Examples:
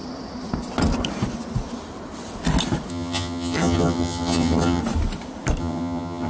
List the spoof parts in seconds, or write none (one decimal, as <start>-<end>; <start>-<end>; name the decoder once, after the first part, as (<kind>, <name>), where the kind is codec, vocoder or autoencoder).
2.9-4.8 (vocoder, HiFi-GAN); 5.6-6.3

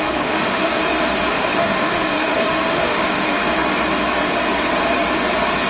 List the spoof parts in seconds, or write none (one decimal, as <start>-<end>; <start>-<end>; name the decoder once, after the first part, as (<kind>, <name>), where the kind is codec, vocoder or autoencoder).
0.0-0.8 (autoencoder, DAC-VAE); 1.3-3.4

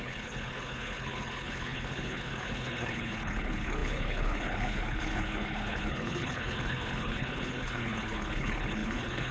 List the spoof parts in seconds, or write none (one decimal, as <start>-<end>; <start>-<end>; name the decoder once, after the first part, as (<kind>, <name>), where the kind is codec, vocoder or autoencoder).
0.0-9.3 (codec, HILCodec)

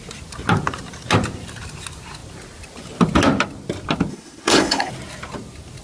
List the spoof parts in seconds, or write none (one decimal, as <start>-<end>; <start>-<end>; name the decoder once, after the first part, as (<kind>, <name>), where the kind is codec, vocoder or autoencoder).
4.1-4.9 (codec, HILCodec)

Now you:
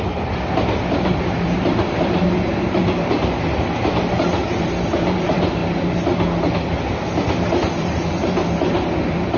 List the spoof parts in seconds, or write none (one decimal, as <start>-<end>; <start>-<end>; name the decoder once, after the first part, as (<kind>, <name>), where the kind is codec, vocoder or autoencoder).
0.0-5.6 (vocoder, BigVGAN v2); 7.6-8.4; 9.0-9.4

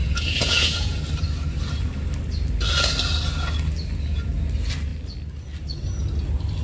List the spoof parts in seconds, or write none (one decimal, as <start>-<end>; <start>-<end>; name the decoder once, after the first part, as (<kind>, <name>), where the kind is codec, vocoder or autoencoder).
0.0-1.0 (vocoder, Vocos)